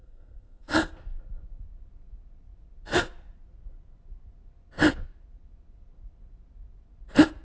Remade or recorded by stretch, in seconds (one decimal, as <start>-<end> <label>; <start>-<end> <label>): 0.0-0.9 remade; 0.9-7.4 recorded